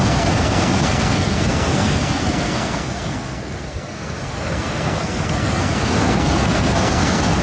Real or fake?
fake